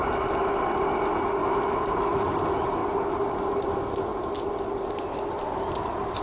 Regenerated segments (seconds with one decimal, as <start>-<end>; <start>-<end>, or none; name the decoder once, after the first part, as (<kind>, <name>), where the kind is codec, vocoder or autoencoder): none